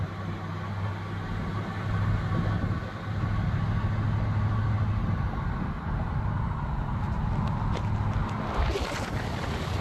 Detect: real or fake real